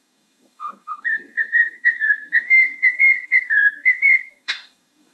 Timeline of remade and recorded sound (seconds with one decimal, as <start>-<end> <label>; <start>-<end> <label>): 0.0-5.1 remade